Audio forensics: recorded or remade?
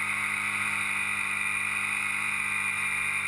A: remade